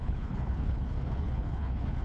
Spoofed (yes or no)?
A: yes